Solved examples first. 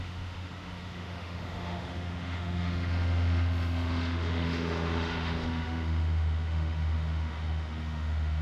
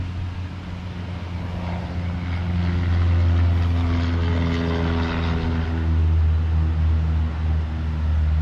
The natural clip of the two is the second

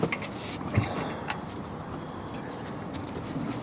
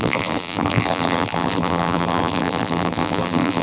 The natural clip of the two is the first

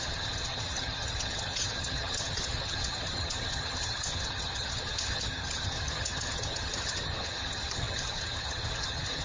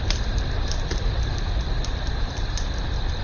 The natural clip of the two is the second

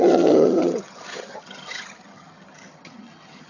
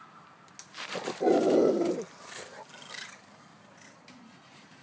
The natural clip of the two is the second